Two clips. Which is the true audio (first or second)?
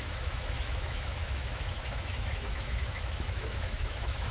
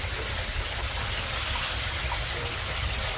second